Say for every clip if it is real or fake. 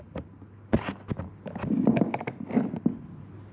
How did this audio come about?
real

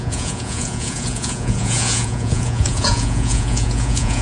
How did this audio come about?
fake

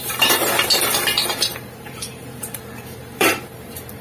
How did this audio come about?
fake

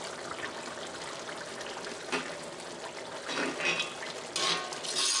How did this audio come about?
real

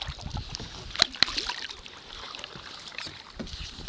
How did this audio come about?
real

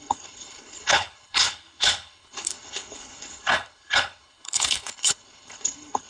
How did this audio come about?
fake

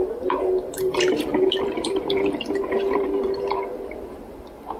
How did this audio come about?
fake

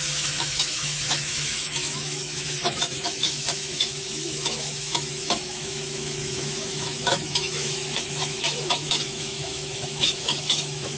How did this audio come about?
fake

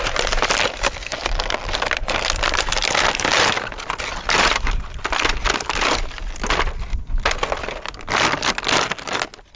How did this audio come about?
real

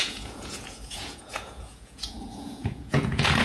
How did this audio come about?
fake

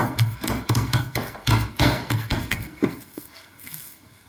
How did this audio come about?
fake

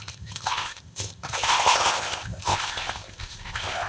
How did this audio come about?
fake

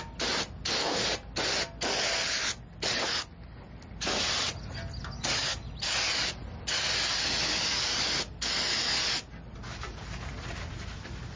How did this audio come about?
real